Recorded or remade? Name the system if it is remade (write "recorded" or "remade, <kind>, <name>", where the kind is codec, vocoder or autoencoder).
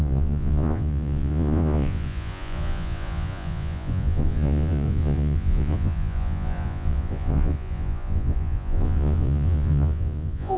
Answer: remade, vocoder, Vocos